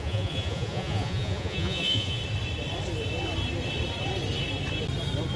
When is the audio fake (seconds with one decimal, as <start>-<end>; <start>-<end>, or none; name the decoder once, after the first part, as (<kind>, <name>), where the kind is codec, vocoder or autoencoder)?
0.0-2.2 (vocoder, Vocos)